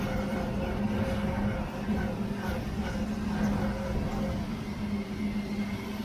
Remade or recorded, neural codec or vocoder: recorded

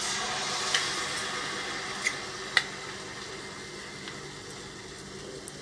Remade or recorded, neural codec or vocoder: recorded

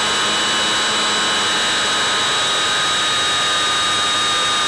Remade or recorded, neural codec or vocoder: recorded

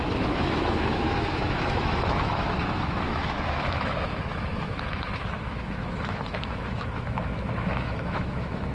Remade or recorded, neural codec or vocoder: remade, autoencoder, DAC-VAE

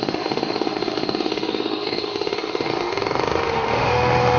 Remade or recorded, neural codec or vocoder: remade, autoencoder, DAC-VAE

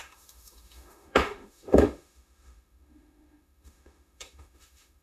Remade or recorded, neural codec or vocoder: remade, autoencoder, DAC-VAE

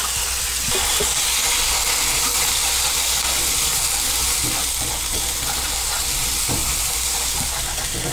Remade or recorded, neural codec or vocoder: recorded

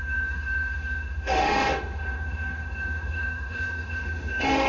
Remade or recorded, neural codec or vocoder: remade, autoencoder, DAC-VAE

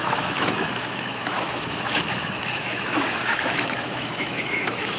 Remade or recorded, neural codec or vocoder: remade, autoencoder, DAC-VAE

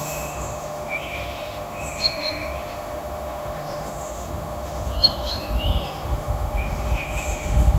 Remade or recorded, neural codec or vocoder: remade, autoencoder, DAC-VAE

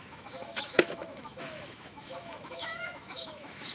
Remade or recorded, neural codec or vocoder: remade, autoencoder, DAC-VAE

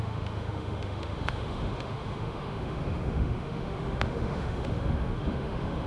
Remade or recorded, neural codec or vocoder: remade, autoencoder, DAC-VAE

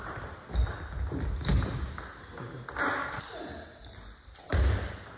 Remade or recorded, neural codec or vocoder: recorded